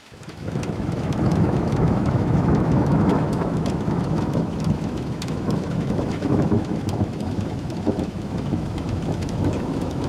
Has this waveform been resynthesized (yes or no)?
yes